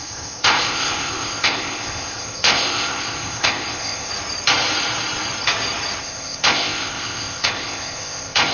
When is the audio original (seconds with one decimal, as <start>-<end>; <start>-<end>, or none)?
4.1-6.0